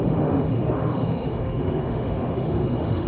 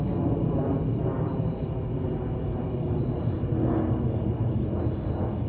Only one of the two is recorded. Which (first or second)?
second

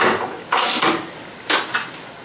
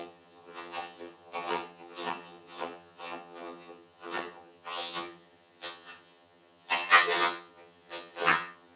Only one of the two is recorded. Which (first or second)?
first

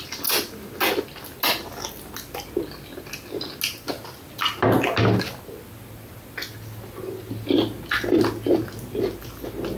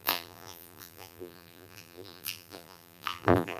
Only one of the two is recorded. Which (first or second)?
first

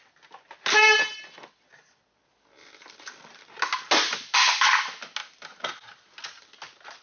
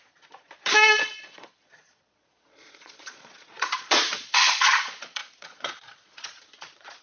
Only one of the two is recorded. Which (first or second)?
first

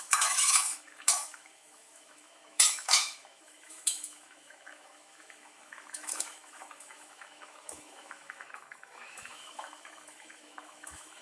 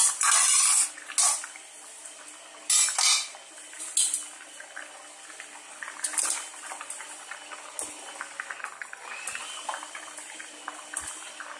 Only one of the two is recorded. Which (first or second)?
second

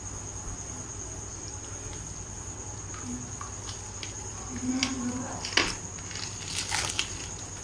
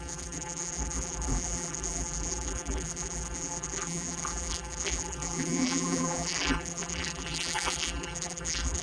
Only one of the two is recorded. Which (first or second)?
first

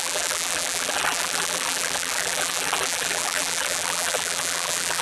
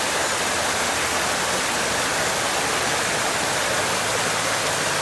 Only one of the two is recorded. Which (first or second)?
second